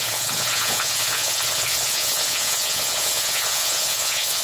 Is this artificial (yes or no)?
yes